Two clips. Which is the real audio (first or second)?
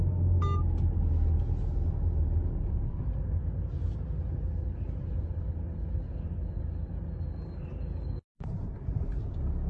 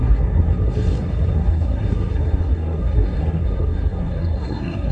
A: first